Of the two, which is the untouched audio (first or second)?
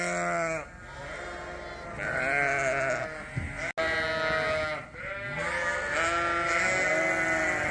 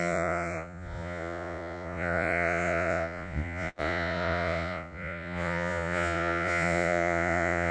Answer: first